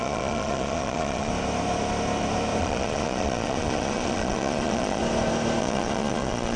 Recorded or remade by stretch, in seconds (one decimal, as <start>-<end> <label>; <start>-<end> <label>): 0.0-1.3 remade; 1.3-2.6 recorded; 2.6-5.0 remade; 5.0-5.6 recorded; 5.6-6.6 remade